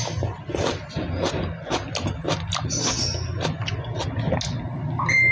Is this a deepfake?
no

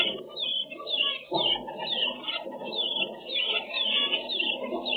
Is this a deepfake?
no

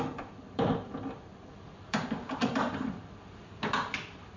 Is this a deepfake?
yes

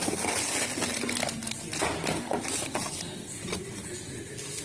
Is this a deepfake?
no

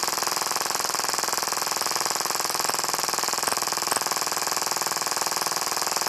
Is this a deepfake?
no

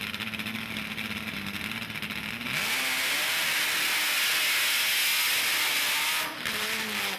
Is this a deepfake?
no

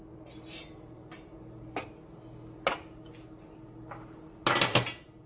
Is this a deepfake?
no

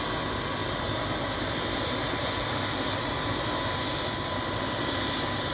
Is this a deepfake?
no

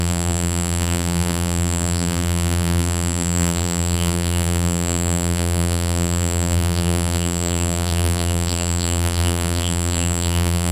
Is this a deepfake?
yes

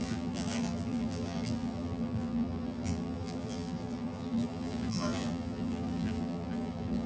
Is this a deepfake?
yes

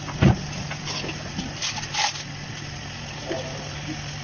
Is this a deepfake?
no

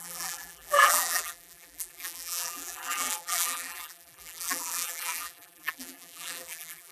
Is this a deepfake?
yes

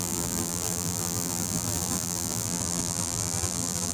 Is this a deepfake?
yes